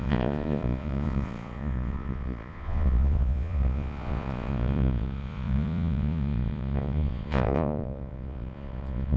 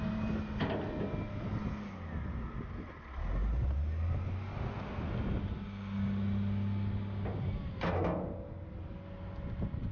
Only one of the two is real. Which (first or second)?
second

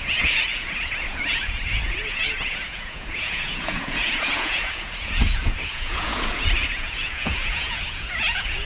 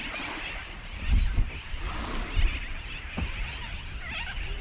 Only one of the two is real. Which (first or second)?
second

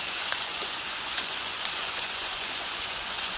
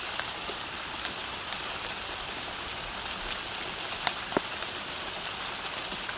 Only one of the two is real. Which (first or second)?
second